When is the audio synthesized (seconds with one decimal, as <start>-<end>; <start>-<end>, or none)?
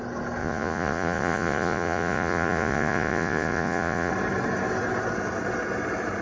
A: 0.4-4.1